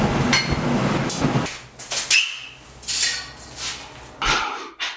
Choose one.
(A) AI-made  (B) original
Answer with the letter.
B